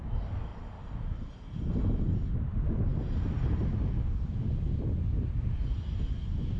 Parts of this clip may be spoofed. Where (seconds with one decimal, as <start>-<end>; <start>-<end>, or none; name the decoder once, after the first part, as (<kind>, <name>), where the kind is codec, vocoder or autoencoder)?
0.5-1.3 (vocoder, BigVGAN v2)